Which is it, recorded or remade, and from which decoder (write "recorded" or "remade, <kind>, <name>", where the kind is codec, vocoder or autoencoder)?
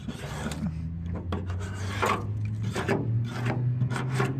recorded